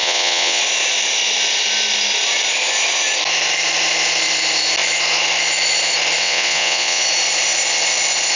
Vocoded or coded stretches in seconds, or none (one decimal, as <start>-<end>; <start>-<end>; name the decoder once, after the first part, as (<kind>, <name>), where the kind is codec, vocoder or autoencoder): 0.0-0.6 (vocoder, WaveNeXt); 6.2-7.0